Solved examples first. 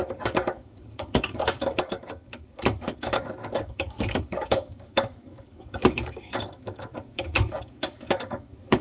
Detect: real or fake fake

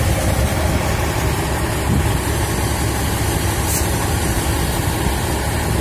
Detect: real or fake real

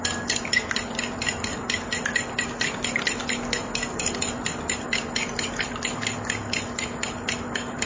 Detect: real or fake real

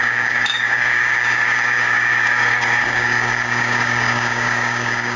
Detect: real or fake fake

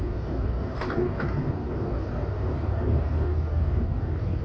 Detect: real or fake fake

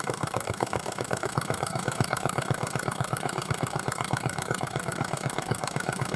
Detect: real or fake fake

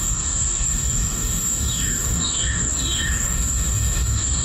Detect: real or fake fake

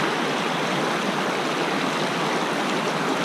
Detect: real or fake real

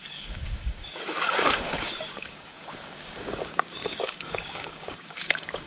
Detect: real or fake fake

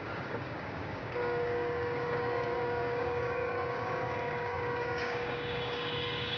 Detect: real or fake fake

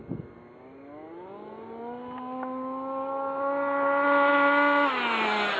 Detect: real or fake real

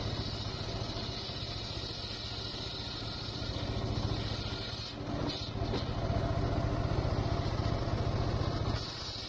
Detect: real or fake real